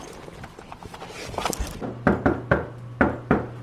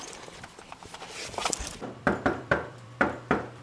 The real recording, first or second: first